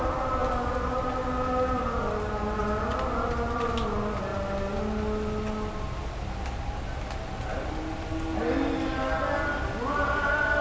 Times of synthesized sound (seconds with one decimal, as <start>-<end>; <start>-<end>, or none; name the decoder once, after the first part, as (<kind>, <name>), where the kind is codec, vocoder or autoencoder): none